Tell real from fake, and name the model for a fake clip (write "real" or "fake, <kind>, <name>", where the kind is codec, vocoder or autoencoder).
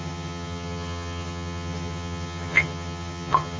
fake, vocoder, HiFi-GAN